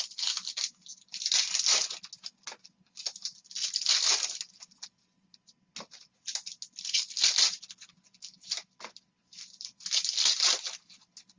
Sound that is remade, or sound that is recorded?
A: recorded